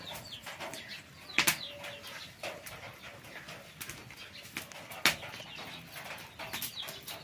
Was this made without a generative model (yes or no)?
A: yes